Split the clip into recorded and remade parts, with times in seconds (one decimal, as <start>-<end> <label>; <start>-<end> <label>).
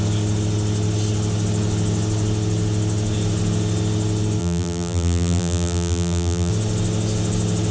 0.0-4.4 recorded; 4.4-6.5 remade; 6.5-7.7 recorded